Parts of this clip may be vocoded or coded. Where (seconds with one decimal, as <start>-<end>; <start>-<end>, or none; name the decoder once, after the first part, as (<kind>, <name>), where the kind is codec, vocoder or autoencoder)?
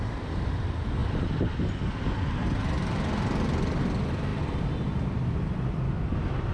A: none